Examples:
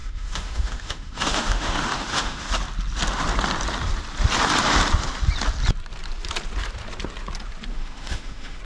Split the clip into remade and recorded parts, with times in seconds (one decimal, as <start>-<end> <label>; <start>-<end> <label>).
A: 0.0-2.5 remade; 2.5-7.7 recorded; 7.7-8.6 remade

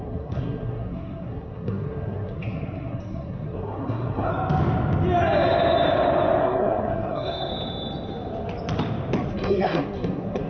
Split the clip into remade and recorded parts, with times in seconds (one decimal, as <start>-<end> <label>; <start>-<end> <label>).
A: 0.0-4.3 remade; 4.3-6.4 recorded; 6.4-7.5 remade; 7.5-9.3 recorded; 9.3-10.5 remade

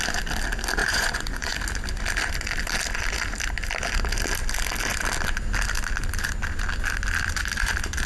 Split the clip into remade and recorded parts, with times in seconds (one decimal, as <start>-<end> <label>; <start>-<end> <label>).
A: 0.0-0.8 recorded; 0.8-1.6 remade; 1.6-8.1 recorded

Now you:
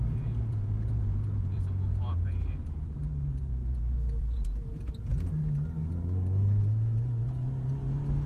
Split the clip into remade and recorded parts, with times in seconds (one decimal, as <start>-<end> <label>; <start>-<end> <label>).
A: 0.0-5.4 remade; 5.4-8.3 recorded